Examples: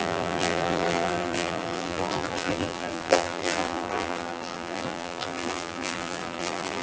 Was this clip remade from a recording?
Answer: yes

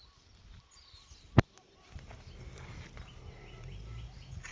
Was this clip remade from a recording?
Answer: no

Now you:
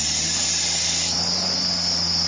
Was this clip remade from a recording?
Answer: no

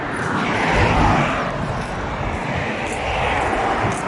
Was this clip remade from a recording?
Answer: no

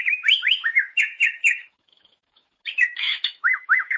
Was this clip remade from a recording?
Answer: yes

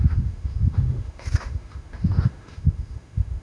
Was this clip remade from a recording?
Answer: yes